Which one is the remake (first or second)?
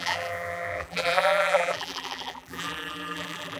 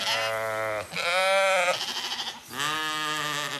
first